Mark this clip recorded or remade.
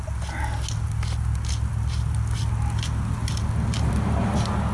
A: recorded